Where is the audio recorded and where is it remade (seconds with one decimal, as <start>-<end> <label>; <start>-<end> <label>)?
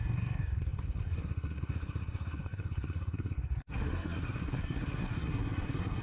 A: 0.0-6.0 remade